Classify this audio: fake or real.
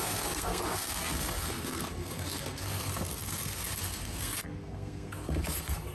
fake